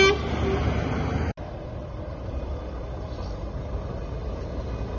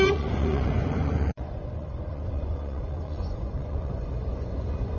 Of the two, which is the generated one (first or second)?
second